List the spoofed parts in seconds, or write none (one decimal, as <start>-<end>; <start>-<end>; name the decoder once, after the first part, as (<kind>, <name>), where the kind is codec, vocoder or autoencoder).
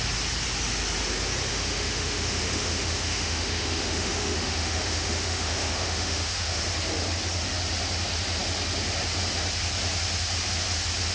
1.5-6.6 (autoencoder, DAC-VAE)